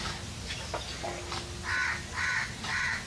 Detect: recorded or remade recorded